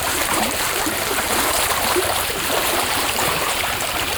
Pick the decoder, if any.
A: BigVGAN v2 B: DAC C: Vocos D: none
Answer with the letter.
A